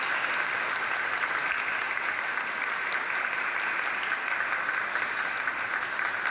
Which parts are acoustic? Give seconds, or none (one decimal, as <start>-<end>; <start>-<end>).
0.0-6.3